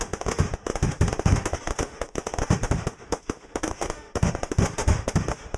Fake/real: fake